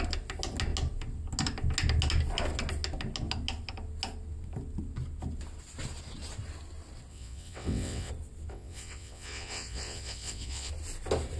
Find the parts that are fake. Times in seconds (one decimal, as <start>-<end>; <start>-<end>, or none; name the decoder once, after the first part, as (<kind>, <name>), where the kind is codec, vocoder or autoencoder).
7.1-8.1 (vocoder, WaveNeXt); 8.5-10.7